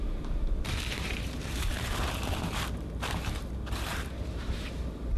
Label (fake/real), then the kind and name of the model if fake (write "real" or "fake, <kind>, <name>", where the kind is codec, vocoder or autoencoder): fake, vocoder, BigVGAN v2